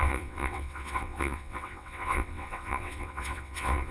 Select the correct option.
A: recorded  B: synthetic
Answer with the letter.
B